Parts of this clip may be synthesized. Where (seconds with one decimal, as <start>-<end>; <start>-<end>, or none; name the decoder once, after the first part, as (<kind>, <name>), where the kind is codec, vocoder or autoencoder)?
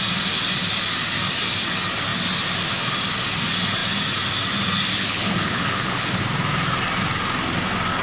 4.9-6.2 (codec, HILCodec)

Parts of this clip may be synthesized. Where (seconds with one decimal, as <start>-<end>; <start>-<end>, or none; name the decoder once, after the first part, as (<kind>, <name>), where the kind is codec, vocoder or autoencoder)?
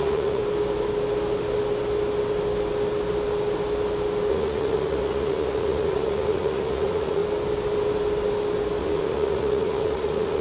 0.0-0.4 (vocoder, Vocos); 4.3-7.2; 8.8-10.4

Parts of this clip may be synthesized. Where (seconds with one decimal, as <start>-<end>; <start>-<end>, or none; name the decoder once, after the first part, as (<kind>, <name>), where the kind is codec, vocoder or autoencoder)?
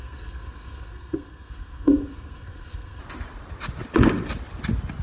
0.0-3.0 (codec, SNAC)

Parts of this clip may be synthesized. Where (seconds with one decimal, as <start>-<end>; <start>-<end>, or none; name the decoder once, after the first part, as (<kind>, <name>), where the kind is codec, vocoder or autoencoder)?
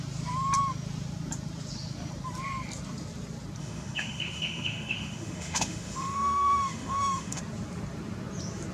3.6-7.4 (autoencoder, DAC-VAE)